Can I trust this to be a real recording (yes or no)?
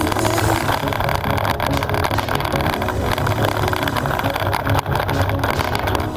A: yes